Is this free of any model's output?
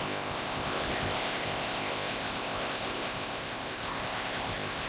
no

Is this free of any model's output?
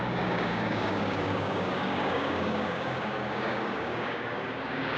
no